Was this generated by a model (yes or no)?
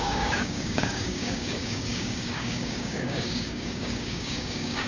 yes